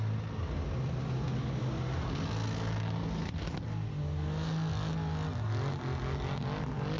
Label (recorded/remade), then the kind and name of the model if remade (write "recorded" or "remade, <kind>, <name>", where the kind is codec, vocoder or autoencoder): recorded